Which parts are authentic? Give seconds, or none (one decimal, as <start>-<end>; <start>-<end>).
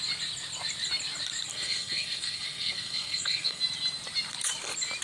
0.0-1.5; 3.6-5.0